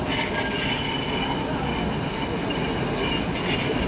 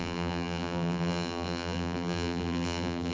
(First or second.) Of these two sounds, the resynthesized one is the second